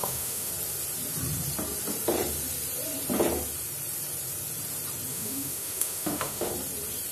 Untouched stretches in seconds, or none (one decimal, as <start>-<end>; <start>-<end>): 0.5-5.1; 6.5-7.1